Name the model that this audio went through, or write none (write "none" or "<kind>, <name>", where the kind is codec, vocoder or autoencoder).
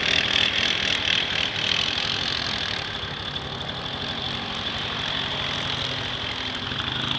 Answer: none